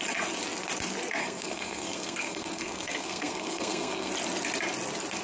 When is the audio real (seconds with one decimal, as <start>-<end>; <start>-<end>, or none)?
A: 0.0-1.2; 4.1-5.2